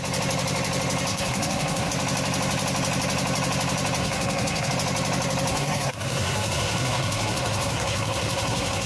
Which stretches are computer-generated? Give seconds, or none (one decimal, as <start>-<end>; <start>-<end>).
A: 1.1-1.9; 4.0-4.7; 5.5-8.9